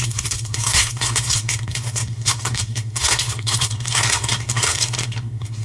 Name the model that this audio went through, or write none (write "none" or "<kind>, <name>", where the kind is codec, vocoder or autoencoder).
codec, SNAC